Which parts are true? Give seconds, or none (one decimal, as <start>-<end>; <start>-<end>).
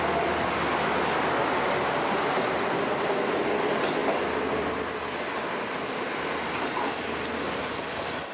0.0-8.3